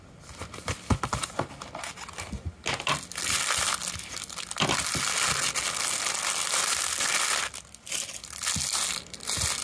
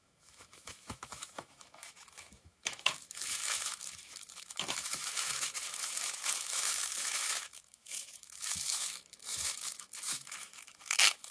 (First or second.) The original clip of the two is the first